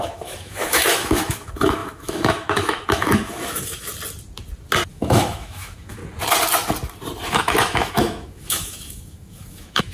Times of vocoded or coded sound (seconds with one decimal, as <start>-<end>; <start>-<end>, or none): 0.0-3.9; 4.9-6.0; 7.3-9.9